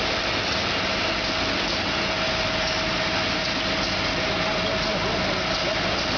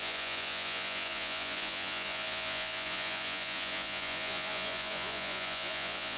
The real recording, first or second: first